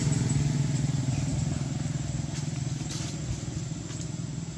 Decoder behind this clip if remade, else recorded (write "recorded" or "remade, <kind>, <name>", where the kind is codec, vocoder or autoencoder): recorded